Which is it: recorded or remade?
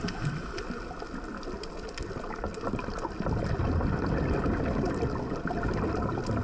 recorded